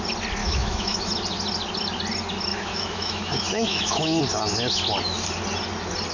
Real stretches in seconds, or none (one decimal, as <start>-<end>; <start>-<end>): 0.0-0.4; 1.1-2.5; 4.2-6.1